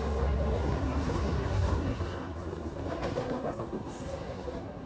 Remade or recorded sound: remade